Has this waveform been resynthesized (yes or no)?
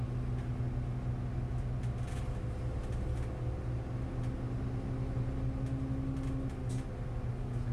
no